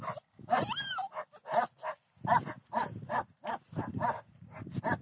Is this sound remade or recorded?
recorded